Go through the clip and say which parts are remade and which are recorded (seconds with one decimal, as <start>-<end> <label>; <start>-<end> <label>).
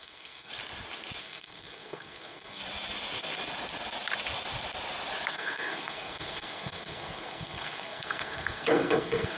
0.0-0.5 remade; 0.5-1.2 recorded; 1.2-2.6 remade; 2.6-5.3 recorded; 5.3-9.4 remade